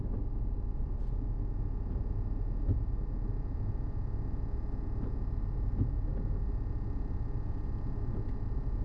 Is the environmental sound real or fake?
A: real